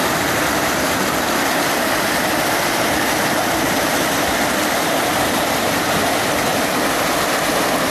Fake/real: real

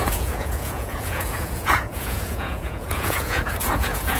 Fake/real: fake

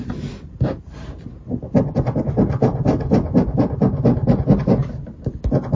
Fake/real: real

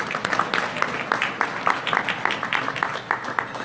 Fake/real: real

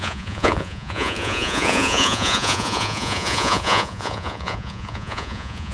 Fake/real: fake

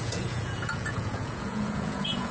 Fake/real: fake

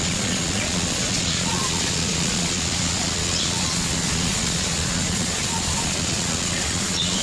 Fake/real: fake